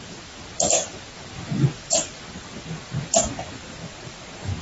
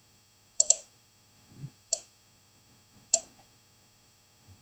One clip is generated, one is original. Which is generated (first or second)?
second